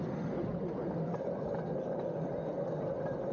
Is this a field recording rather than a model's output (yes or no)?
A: yes